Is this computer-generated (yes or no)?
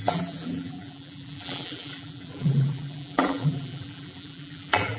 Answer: yes